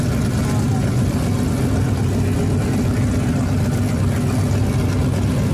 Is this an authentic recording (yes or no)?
yes